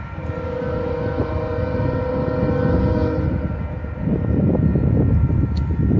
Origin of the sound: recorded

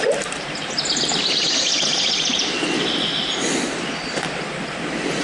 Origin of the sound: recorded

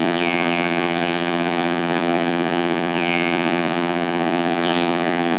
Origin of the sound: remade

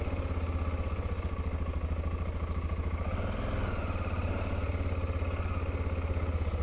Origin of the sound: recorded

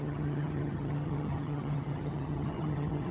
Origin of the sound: remade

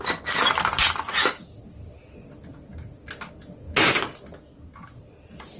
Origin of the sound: recorded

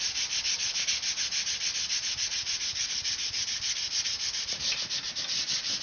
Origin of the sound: recorded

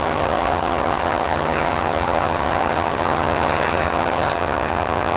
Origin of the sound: remade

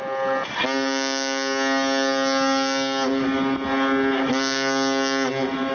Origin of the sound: recorded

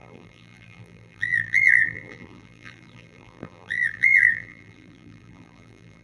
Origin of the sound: remade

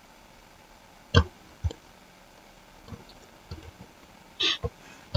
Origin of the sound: recorded